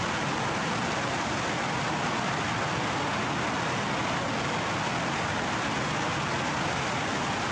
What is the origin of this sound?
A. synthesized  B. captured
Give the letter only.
B